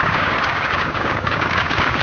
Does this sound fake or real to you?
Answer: fake